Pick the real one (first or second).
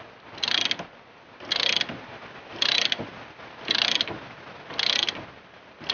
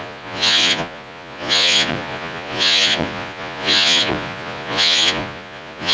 first